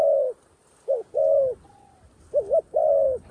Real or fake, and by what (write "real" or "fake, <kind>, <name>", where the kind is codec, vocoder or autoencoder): real